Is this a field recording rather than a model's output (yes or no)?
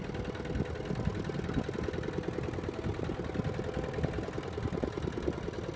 yes